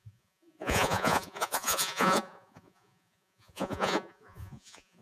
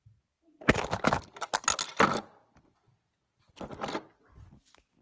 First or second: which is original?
second